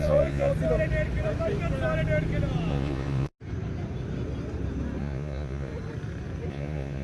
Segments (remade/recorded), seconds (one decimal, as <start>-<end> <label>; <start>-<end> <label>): 0.0-0.5 remade; 0.5-2.7 recorded; 2.7-3.3 remade; 3.3-5.0 recorded; 5.0-5.7 remade; 5.7-6.5 recorded; 6.5-7.0 remade